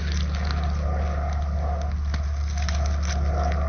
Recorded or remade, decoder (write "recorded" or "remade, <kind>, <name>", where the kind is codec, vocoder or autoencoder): recorded